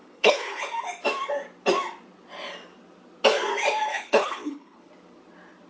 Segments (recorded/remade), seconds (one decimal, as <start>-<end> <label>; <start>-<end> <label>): 0.0-0.6 remade; 0.6-3.9 recorded; 3.9-4.9 remade; 4.9-5.7 recorded